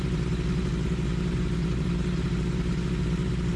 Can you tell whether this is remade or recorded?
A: recorded